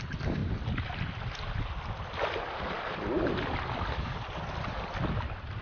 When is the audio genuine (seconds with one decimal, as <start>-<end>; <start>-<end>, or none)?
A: 0.0-5.6